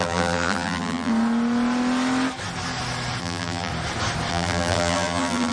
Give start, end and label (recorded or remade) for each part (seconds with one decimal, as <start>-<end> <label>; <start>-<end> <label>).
0.0-1.1 remade; 1.1-3.2 recorded; 3.2-3.7 remade; 3.7-4.3 recorded; 4.3-5.5 remade